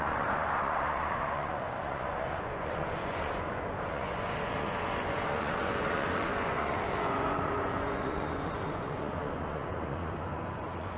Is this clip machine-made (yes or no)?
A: yes